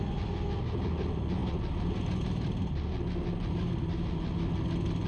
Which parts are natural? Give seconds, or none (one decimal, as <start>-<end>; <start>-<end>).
0.0-5.1